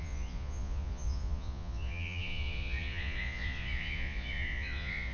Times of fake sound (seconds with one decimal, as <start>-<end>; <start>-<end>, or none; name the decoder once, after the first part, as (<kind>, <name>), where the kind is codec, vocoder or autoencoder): 0.0-5.1 (vocoder, Vocos)